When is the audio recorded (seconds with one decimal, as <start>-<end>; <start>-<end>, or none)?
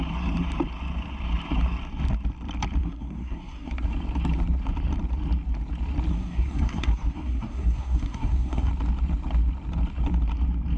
0.0-2.8; 3.7-6.1; 8.7-10.8